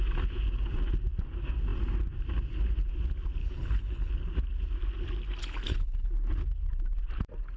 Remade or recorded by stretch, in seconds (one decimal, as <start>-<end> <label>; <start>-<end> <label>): 0.0-3.4 recorded; 3.4-4.1 remade; 4.1-5.4 recorded; 5.4-6.1 remade; 6.1-7.6 recorded